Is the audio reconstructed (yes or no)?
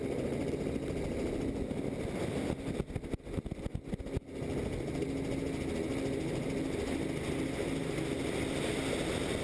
no